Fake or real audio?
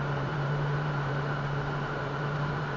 fake